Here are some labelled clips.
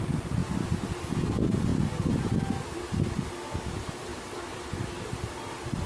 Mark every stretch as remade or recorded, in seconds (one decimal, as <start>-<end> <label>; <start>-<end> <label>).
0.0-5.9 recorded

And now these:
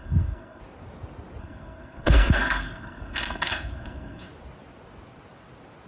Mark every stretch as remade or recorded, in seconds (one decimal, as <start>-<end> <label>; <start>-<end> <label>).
0.0-0.6 remade; 0.6-1.4 recorded; 1.4-4.3 remade; 4.3-5.9 recorded

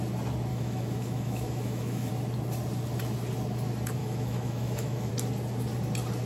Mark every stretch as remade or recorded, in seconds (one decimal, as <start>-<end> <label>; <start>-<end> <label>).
0.0-0.5 recorded; 0.5-2.1 remade; 2.1-4.0 recorded; 4.0-5.1 remade; 5.1-6.3 recorded

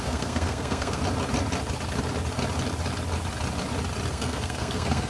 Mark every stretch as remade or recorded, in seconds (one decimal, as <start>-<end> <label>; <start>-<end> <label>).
0.0-1.0 remade; 1.0-4.1 recorded; 4.1-5.1 remade

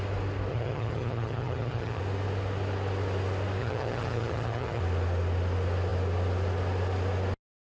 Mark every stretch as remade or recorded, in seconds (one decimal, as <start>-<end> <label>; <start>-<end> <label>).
0.0-0.5 recorded; 0.5-2.0 remade; 2.0-3.6 recorded; 3.6-4.8 remade; 4.8-7.7 recorded

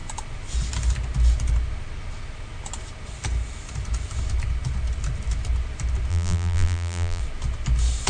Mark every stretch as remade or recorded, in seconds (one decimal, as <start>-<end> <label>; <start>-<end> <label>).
0.0-6.1 recorded; 6.1-7.2 remade; 7.2-8.1 recorded